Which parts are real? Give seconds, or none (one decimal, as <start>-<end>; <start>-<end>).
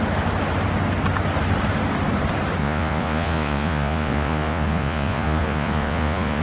0.0-2.6